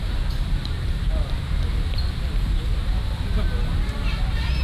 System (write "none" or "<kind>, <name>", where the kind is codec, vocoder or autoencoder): vocoder, BigVGAN v2